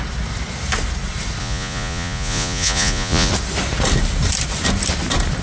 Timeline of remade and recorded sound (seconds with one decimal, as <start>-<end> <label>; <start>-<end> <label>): 0.0-1.4 recorded; 1.4-3.3 remade; 3.3-5.4 recorded